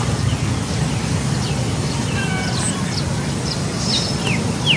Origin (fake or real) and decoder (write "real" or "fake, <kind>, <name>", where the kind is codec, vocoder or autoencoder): real